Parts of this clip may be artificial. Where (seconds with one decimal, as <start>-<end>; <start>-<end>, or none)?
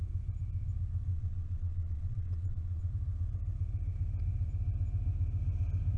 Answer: 1.1-2.9